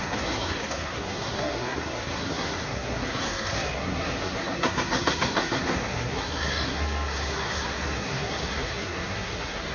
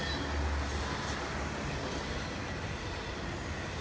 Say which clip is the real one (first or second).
second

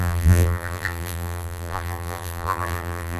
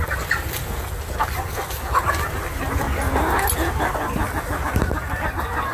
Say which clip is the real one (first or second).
second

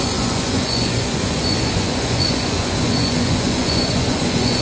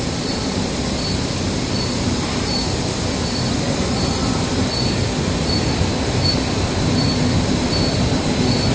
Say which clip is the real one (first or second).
second